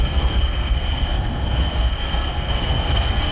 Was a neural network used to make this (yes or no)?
yes